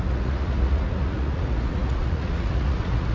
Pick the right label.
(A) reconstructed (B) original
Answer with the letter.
A